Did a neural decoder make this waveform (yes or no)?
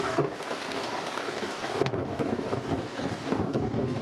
yes